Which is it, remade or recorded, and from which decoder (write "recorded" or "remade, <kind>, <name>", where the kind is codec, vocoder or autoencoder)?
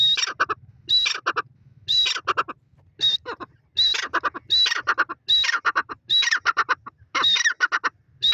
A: recorded